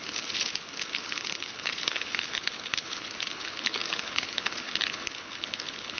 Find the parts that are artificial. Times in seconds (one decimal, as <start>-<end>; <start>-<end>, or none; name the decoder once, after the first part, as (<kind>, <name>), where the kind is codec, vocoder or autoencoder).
0.0-6.0 (codec, HILCodec)